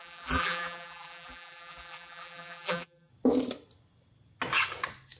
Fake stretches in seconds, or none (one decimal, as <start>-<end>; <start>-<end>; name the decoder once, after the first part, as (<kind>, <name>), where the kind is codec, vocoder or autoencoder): 0.0-3.1 (vocoder, BigVGAN v2)